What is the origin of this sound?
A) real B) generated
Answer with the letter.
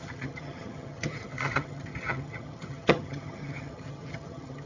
B